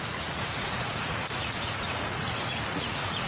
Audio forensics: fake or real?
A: fake